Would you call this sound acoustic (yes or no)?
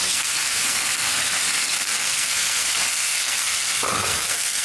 no